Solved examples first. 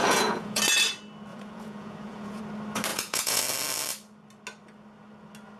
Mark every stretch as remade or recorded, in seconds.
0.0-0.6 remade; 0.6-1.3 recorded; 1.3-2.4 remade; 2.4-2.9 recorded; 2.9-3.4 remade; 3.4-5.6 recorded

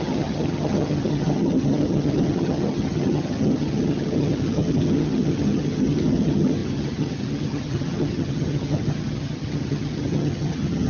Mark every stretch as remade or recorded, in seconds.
0.0-10.9 remade